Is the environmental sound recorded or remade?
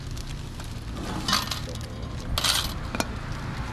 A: recorded